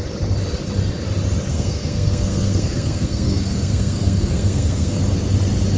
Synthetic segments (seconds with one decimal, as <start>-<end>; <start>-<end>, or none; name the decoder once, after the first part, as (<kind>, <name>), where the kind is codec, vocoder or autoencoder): 1.5-5.0 (codec, SNAC)